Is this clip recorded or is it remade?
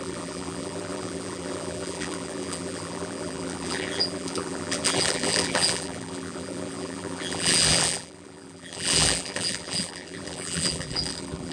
remade